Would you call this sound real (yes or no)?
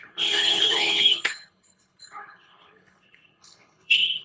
no